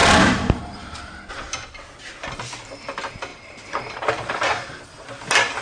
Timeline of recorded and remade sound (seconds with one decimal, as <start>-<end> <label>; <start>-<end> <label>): 0.0-1.0 remade; 1.0-3.3 recorded; 3.3-4.7 remade; 4.7-5.6 recorded